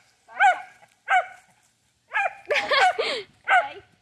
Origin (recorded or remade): recorded